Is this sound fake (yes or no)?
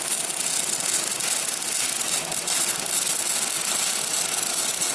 no